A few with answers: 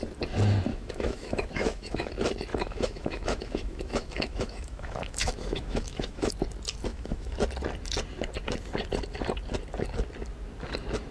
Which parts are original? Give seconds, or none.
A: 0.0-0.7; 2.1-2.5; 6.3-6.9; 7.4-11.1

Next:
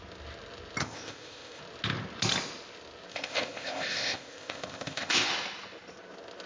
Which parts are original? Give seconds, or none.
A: 0.0-0.8; 1.6-3.1; 5.3-6.5

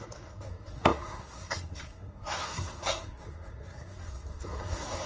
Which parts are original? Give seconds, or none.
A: none

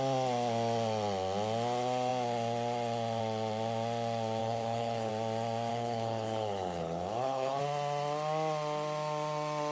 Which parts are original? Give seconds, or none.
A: 0.0-4.4; 5.1-5.7; 7.6-9.7

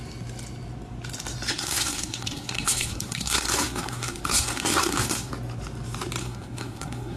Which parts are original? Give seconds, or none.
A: 0.0-1.5; 5.3-6.2

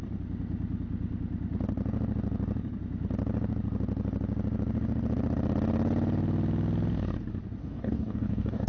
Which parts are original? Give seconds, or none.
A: 0.0-7.6